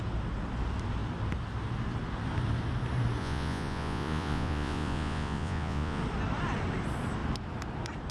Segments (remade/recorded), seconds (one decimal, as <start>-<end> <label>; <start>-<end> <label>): 0.0-3.2 recorded; 3.2-6.0 remade; 6.0-8.1 recorded